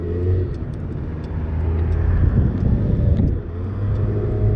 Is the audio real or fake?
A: real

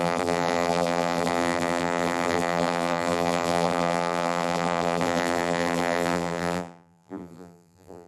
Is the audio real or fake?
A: fake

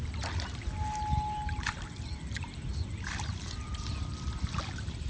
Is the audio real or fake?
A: real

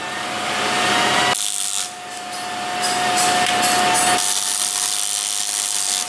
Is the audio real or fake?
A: real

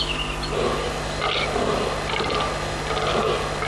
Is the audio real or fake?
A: real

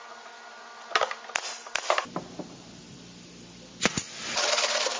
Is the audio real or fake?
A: real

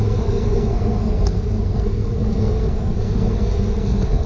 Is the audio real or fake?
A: fake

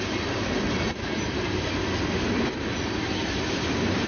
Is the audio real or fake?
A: real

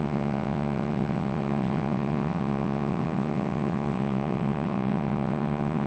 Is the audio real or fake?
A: fake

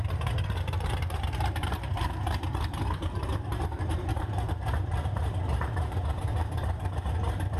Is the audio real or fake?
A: fake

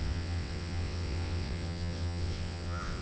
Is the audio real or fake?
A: fake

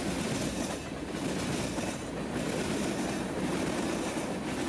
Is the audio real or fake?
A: real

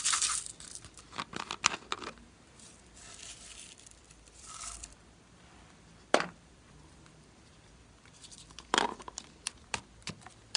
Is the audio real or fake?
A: fake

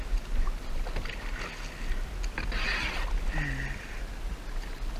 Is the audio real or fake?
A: real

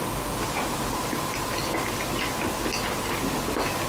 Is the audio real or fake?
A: real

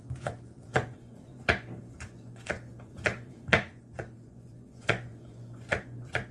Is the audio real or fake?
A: fake